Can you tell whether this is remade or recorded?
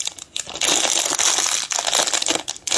recorded